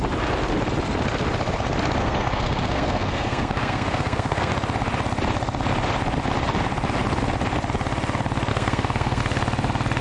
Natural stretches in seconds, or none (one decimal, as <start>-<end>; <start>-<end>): 0.0-2.0; 4.5-8.5; 9.2-10.0